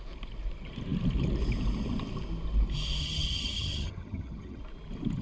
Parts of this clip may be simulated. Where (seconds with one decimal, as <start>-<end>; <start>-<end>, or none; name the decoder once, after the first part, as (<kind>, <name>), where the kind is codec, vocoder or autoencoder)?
3.0-4.6 (vocoder, HiFi-GAN)